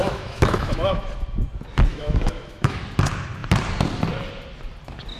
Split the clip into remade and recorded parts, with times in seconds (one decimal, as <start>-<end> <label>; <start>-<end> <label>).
0.0-1.0 remade; 1.0-1.9 recorded; 1.9-2.8 remade; 2.8-5.2 recorded